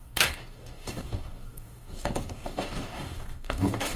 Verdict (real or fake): fake